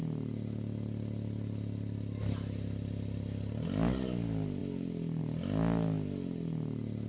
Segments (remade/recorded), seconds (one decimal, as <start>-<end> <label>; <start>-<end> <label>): 0.0-7.1 recorded